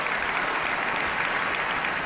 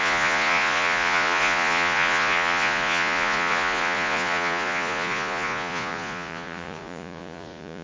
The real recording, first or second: first